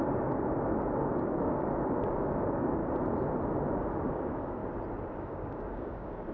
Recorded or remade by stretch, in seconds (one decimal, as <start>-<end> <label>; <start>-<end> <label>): 0.0-0.6 recorded; 0.6-2.8 remade; 2.8-3.7 recorded; 3.7-4.6 remade; 4.6-5.2 recorded; 5.2-6.3 remade